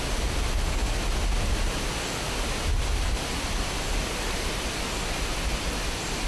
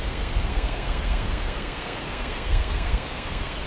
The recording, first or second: first